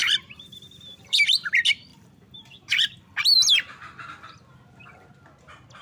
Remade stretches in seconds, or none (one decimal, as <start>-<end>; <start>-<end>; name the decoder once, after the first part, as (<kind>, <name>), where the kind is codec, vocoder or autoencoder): 0.0-1.3 (vocoder, BigVGAN v2); 1.9-3.5